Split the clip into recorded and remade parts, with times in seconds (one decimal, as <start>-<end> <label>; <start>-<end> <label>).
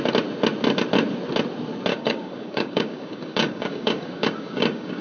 0.0-1.9 recorded; 1.9-5.0 remade